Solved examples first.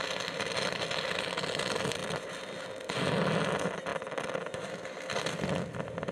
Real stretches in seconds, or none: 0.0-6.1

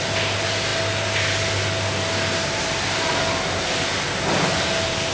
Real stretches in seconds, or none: 0.0-5.1

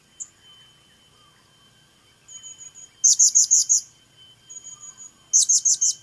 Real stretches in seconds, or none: 0.0-6.0

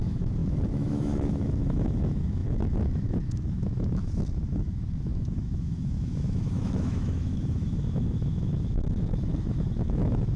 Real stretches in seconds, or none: none